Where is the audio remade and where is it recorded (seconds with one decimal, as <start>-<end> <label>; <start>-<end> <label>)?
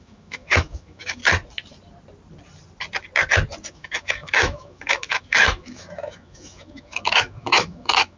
0.0-1.2 remade; 1.2-3.7 recorded; 3.7-8.2 remade